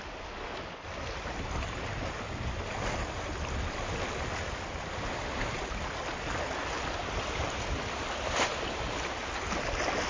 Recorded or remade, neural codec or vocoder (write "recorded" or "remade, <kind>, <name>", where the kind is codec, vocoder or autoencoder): recorded